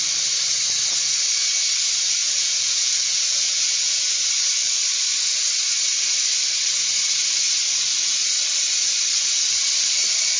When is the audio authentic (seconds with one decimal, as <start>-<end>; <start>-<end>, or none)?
0.0-2.2; 4.1-10.4